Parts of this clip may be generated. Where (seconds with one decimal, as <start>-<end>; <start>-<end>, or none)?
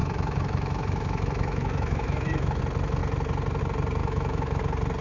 0.0-2.6; 4.0-4.6